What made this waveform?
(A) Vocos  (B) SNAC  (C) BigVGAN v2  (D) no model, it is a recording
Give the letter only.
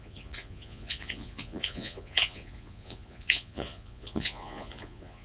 A